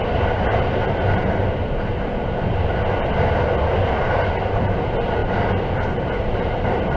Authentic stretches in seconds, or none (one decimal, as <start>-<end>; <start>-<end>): 0.0-7.0